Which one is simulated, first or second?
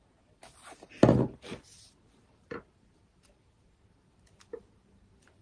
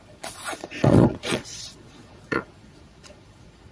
second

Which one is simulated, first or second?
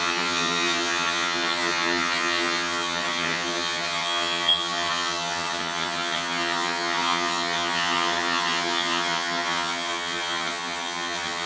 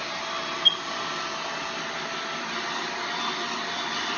first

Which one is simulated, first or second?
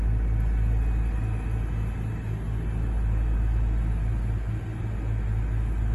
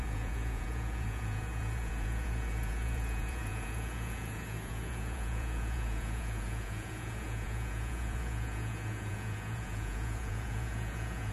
second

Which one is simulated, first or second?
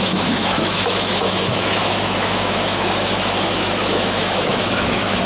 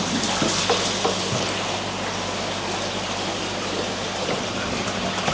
first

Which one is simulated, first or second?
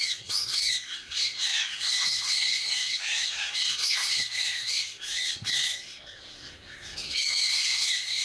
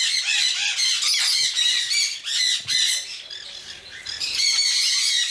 first